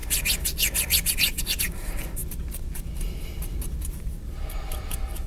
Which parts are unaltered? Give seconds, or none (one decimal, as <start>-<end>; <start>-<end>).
0.0-1.4; 2.2-4.2